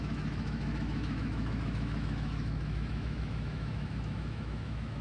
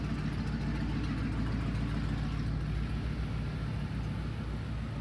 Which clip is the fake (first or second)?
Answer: first